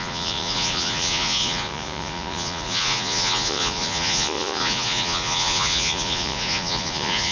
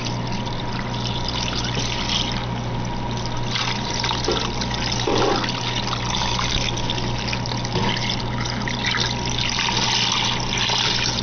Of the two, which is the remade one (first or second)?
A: first